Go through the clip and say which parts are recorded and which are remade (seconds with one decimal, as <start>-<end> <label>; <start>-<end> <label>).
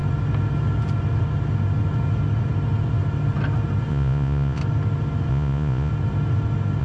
0.0-3.9 recorded; 3.9-4.6 remade; 4.6-5.3 recorded; 5.3-5.9 remade; 5.9-6.8 recorded